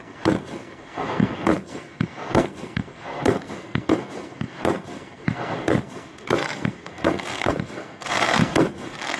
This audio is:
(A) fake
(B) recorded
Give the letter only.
A